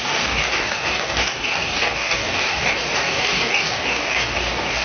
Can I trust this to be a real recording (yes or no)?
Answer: no